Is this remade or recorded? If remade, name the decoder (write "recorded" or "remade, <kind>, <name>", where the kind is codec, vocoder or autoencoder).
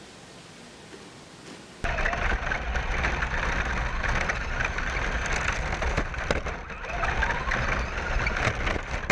recorded